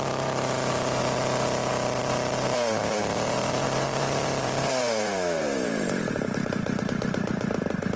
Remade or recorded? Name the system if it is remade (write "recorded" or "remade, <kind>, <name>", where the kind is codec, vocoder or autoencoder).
remade, vocoder, BigVGAN v2